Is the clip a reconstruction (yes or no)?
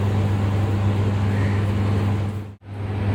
no